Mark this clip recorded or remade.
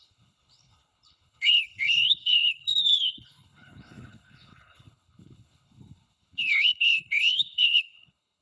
remade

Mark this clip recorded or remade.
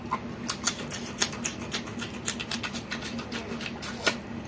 recorded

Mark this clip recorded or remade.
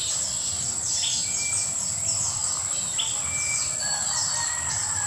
remade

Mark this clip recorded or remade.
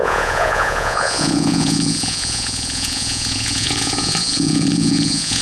remade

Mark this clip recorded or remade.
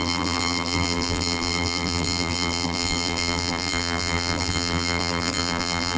remade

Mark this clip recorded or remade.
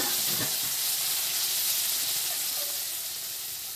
recorded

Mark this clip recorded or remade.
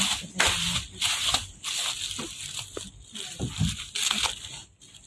recorded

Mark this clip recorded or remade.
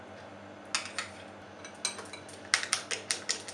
recorded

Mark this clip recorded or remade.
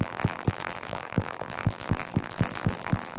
remade